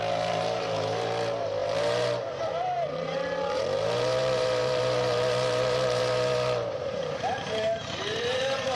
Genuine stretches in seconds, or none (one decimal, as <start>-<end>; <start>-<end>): none